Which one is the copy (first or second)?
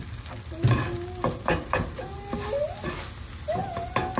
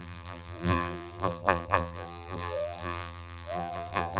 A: second